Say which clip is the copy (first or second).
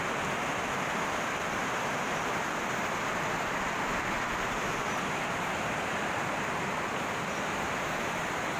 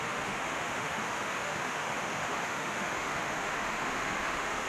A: second